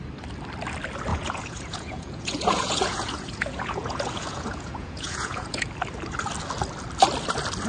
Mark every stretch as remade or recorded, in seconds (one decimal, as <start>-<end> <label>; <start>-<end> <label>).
0.0-1.1 recorded; 1.1-5.7 remade; 5.7-7.7 recorded